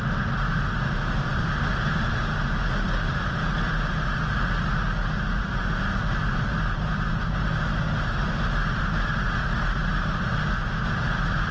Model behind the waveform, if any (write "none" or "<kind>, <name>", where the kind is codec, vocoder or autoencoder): none